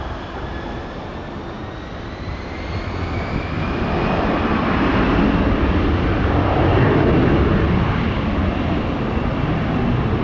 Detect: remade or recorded recorded